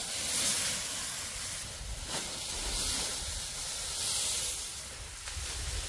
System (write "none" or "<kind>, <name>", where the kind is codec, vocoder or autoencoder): none